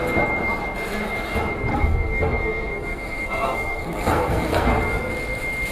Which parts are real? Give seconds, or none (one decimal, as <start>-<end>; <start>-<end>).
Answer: 0.0-1.7; 5.1-5.7